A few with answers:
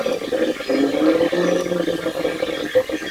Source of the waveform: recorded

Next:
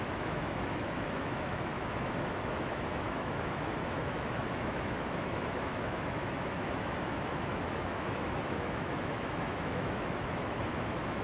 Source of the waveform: remade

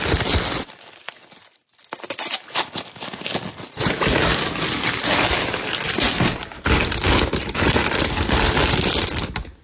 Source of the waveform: recorded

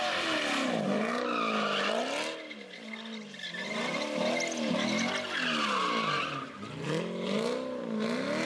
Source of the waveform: recorded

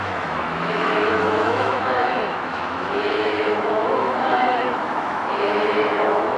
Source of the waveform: remade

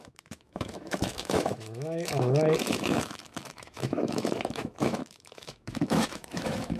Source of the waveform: remade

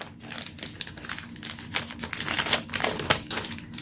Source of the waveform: recorded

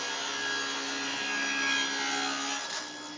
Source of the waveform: recorded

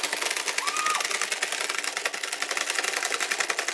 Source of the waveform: recorded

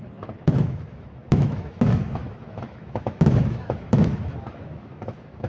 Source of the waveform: remade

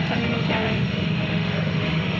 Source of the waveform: remade